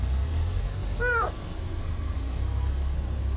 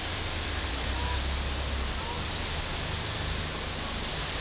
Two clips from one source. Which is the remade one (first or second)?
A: first